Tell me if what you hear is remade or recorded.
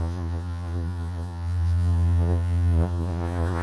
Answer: remade